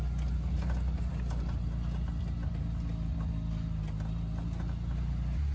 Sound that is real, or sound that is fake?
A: real